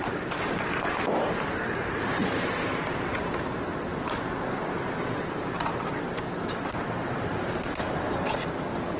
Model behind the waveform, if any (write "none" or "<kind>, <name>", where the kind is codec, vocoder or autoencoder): vocoder, BigVGAN v2